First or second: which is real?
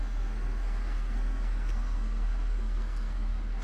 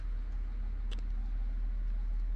second